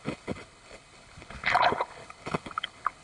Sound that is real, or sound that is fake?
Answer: fake